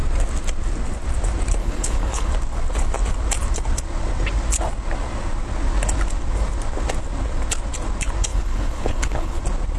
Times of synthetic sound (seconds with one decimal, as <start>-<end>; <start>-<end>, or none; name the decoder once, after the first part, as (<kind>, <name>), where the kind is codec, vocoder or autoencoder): 1.6-2.3 (codec, HILCodec); 8.3-9.4